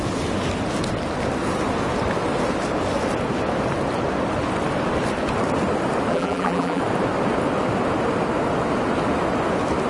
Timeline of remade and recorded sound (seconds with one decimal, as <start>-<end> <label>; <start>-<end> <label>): 0.0-6.1 recorded; 6.1-6.8 remade; 6.8-9.9 recorded